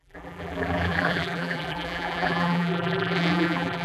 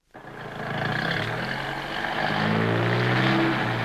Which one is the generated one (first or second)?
first